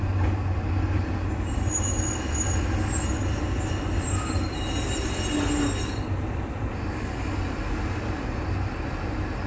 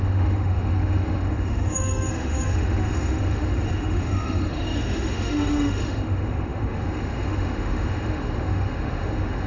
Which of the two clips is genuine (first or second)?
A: first